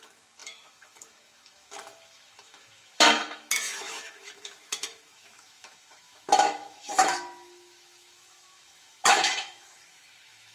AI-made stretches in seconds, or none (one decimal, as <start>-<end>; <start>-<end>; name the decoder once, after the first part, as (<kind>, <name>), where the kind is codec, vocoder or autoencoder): 0.0-10.5 (autoencoder, DAC-VAE)